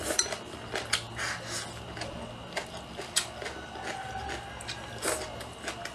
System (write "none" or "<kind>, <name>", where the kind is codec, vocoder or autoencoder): none